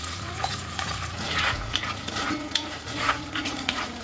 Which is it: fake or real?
fake